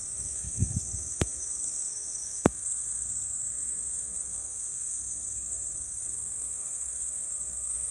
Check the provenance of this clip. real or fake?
fake